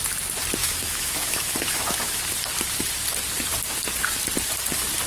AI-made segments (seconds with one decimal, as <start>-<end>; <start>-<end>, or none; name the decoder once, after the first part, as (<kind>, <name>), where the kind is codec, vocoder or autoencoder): 0.6-2.2 (autoencoder, DAC-VAE)